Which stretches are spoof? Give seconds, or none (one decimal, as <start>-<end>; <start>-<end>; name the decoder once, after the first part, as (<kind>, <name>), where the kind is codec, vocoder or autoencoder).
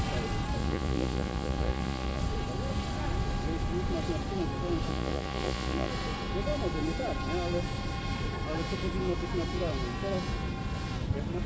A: 0.6-2.2 (vocoder, Vocos); 4.9-5.9